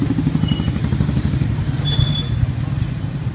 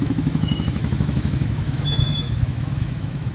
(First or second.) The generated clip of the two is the second